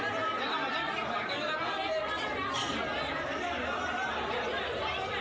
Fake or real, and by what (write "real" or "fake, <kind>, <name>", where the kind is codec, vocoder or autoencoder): real